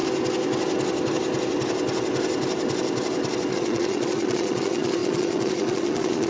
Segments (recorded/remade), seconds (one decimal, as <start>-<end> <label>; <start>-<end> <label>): 0.0-3.5 recorded; 3.5-6.3 remade